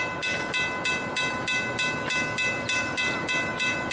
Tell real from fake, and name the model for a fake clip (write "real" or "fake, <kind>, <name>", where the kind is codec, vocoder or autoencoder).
real